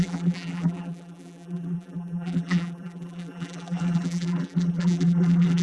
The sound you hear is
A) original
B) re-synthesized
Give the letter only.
B